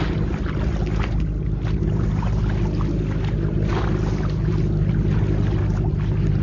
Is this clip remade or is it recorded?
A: recorded